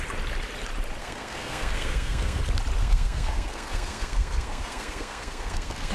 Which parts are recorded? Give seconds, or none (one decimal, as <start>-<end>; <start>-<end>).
0.0-1.0; 2.4-2.8